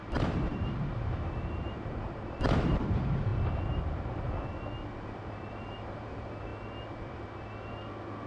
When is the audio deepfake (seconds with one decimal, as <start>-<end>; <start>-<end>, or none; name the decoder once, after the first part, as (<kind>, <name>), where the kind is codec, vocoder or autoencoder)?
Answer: 0.0-3.3 (vocoder, BigVGAN v2); 5.0-6.5